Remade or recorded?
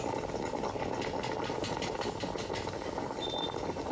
recorded